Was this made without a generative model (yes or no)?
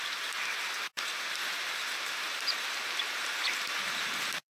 no